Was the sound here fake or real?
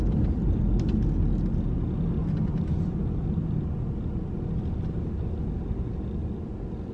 real